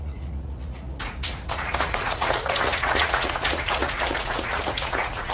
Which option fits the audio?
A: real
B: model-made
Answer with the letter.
B